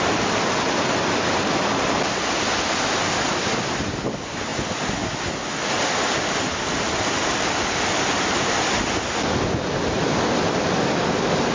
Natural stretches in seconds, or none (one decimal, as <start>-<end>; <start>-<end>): 0.0-11.5